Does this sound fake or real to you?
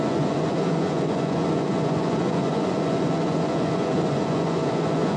fake